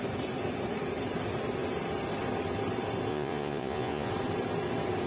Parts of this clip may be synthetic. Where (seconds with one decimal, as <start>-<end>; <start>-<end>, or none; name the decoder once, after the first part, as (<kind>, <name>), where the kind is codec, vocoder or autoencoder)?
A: 3.1-4.1 (vocoder, Vocos)